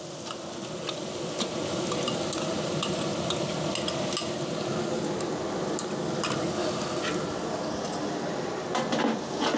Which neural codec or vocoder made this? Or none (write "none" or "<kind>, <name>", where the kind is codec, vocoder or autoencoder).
none